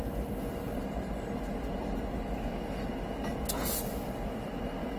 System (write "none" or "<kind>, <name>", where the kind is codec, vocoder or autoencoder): none